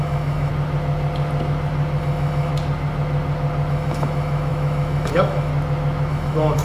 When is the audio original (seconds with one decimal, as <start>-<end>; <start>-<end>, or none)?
0.5-2.0; 2.5-3.7; 5.5-6.1